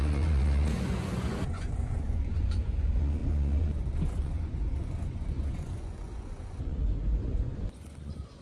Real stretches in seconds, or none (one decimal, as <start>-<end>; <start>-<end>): none